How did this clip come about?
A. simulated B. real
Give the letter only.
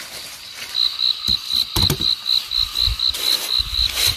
B